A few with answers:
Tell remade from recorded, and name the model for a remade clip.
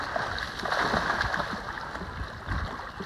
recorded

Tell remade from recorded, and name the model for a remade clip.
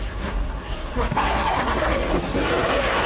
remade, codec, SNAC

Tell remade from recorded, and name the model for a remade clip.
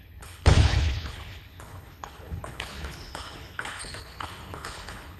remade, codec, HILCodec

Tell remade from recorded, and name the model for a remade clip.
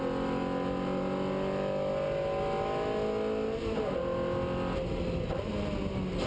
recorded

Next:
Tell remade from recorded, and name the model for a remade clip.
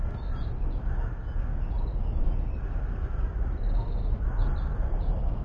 recorded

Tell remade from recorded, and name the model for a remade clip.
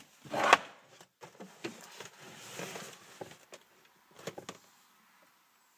recorded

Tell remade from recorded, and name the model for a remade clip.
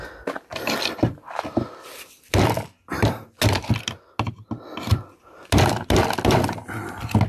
recorded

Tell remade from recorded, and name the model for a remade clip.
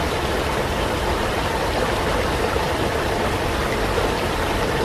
remade, vocoder, BigVGAN v2